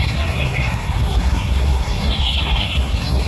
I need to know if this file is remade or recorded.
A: remade